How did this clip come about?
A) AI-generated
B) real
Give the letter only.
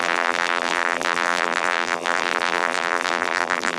A